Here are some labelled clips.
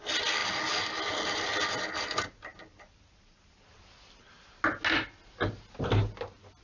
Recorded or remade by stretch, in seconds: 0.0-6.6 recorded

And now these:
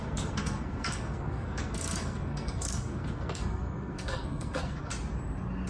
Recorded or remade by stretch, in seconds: 0.0-4.9 remade; 4.9-5.7 recorded

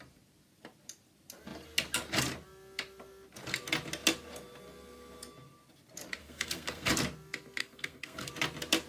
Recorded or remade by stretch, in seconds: 0.0-6.2 recorded; 6.2-6.9 remade; 6.9-7.6 recorded; 7.6-8.3 remade; 8.3-8.9 recorded

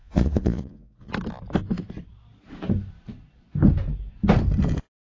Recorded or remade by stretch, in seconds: 0.0-1.1 remade; 1.1-5.1 recorded

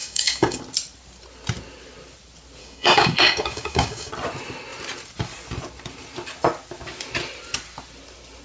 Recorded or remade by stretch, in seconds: 0.0-0.6 remade; 0.6-2.6 recorded; 2.6-4.1 remade; 4.1-8.4 recorded

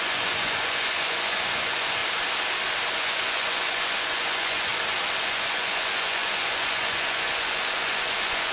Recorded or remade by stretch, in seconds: 0.0-2.0 remade; 2.0-2.9 recorded; 2.9-4.7 remade; 4.7-5.2 recorded; 5.2-8.5 remade